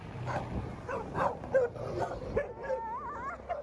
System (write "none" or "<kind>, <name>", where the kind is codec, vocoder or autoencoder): none